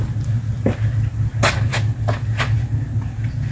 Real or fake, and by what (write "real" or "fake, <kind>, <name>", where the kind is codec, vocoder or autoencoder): real